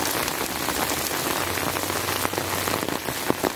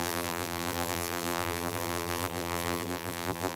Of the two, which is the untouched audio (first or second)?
first